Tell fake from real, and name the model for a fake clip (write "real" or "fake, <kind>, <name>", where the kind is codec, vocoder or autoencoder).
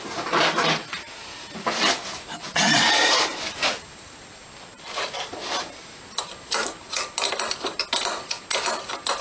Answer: real